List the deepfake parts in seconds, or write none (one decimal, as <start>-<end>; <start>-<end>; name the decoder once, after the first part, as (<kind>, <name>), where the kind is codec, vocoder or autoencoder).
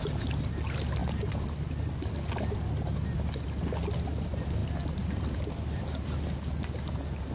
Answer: none